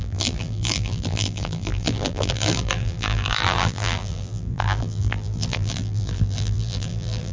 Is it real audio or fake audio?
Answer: fake